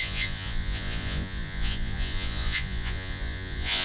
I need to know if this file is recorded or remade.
remade